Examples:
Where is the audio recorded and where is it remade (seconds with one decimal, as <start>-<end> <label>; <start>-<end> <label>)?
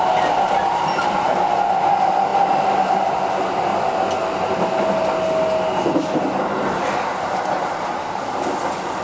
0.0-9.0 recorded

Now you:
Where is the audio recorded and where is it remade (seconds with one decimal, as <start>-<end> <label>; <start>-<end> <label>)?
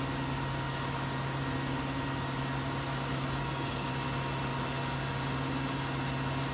0.0-3.4 recorded; 3.4-3.9 remade; 3.9-6.5 recorded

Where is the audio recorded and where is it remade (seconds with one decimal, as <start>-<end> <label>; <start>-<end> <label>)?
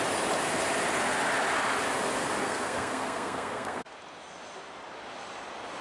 0.0-2.4 recorded; 2.4-3.9 remade; 3.9-5.8 recorded